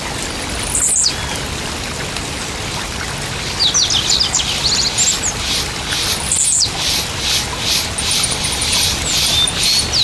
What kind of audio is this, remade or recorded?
recorded